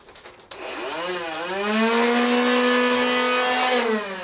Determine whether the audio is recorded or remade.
recorded